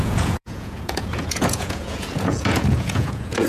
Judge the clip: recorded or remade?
remade